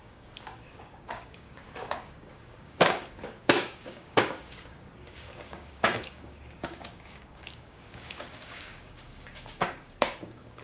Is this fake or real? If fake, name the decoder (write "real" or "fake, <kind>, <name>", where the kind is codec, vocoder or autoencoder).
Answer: fake, codec, DAC